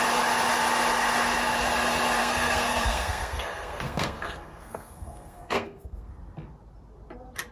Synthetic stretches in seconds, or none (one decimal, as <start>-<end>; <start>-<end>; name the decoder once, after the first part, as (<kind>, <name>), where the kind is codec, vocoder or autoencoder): 2.2-6.1 (codec, SNAC)